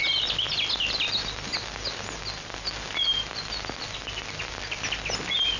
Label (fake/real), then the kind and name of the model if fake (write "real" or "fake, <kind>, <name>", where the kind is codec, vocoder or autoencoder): real